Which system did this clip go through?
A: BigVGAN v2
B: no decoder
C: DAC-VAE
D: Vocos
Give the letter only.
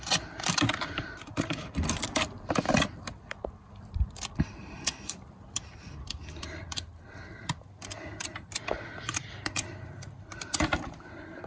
A